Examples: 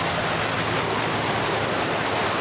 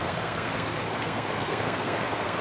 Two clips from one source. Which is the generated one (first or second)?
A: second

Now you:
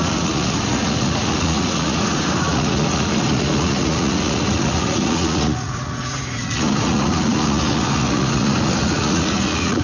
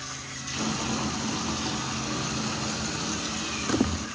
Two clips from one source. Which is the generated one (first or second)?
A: first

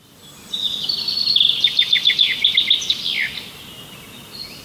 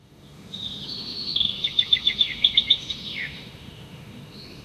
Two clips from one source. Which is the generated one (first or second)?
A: second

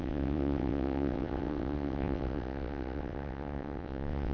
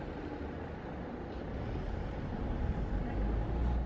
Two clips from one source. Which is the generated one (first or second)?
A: first